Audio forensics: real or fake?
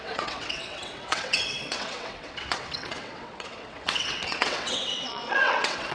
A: fake